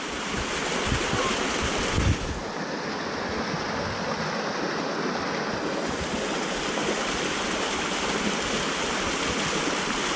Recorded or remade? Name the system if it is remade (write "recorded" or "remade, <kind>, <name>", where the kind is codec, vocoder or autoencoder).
recorded